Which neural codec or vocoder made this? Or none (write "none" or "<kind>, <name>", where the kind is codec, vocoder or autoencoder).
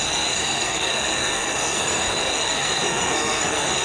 codec, SNAC